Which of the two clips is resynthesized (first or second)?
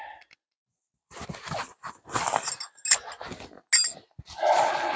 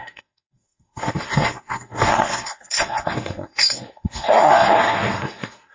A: second